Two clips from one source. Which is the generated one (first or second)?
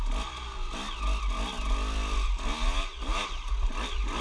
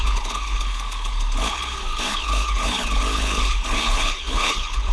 second